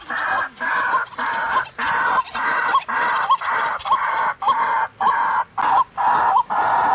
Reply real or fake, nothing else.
real